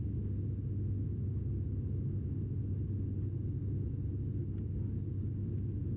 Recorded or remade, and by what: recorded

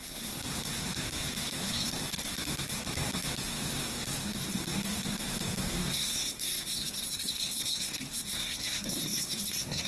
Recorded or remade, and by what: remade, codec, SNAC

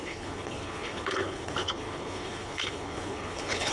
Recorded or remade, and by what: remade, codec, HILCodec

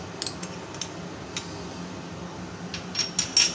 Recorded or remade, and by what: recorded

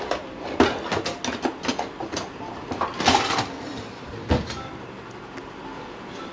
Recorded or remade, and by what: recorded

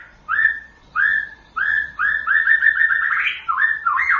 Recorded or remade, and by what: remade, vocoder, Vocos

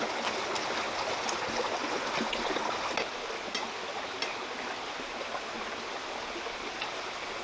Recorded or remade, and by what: recorded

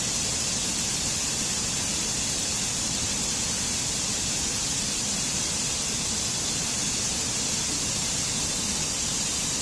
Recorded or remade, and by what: recorded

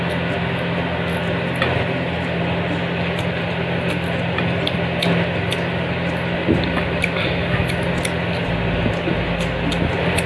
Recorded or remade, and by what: recorded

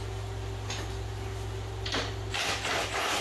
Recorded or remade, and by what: recorded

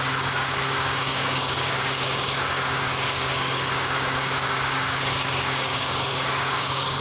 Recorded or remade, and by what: remade, codec, DAC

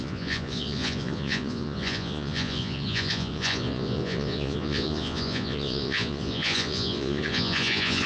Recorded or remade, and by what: remade, vocoder, Vocos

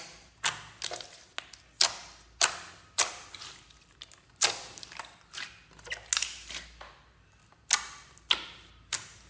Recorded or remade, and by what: recorded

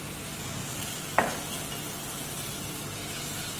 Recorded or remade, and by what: recorded